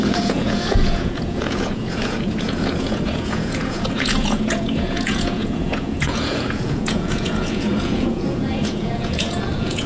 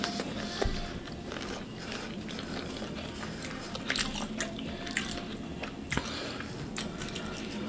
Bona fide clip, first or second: second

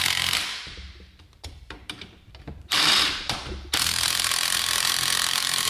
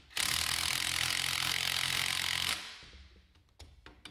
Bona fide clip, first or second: second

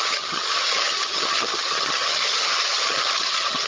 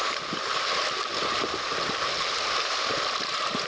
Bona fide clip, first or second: second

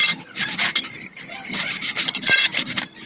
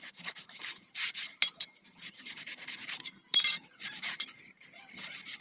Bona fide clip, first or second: first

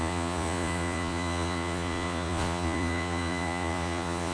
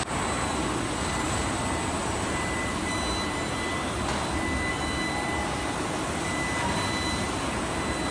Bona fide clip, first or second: second